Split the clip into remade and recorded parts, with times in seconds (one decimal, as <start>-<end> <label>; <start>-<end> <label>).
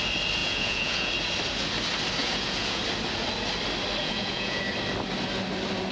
0.0-0.4 recorded; 0.4-1.1 remade; 1.1-2.2 recorded; 2.2-2.8 remade; 2.8-4.0 recorded; 4.0-4.6 remade; 4.6-5.9 recorded